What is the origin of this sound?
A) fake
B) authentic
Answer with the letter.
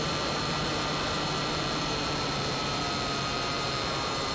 A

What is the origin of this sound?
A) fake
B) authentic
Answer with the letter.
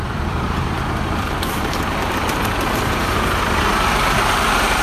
A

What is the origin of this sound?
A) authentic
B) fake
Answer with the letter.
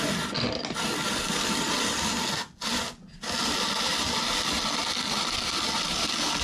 A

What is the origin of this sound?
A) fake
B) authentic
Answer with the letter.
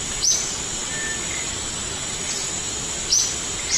B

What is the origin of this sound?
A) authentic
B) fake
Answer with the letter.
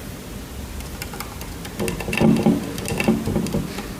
A